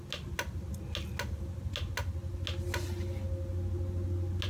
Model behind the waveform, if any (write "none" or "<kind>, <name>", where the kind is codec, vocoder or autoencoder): none